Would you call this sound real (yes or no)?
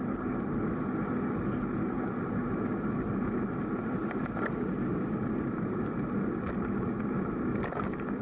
yes